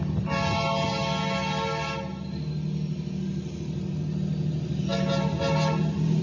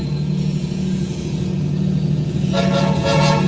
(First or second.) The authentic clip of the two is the first